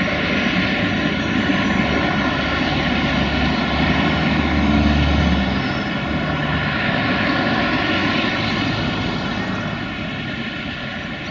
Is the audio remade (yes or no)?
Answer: no